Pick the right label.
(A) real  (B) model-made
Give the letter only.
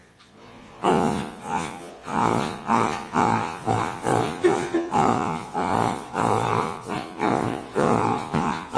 B